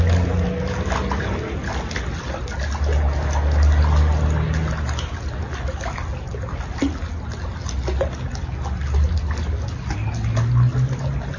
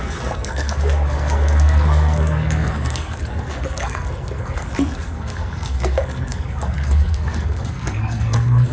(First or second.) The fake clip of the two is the second